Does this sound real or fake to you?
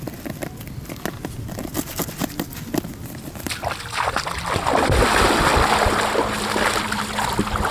real